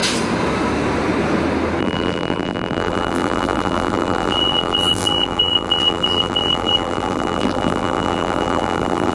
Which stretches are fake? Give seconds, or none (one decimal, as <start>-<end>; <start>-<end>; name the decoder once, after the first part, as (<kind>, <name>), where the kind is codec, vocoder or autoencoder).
1.8-9.1 (vocoder, BigVGAN v2)